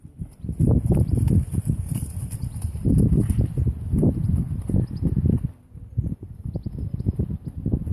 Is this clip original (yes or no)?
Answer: yes